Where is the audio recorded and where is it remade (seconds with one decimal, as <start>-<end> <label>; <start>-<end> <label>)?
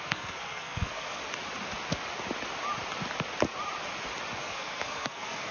0.0-1.2 remade; 1.2-4.4 recorded; 4.4-5.5 remade